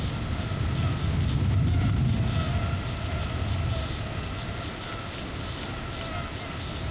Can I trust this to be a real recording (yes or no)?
yes